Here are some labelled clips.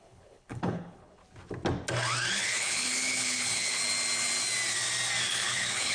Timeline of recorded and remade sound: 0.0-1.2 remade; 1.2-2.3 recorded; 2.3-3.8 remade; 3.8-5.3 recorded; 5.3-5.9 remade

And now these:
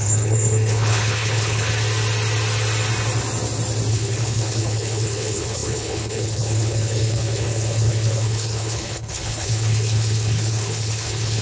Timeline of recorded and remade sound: 0.0-1.7 remade; 1.7-3.9 recorded; 3.9-11.4 remade